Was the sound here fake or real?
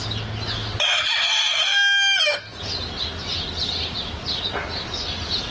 real